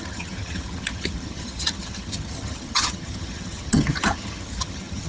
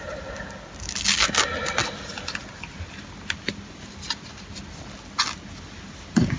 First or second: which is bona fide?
second